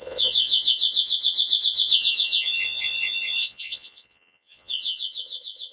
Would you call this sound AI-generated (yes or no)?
yes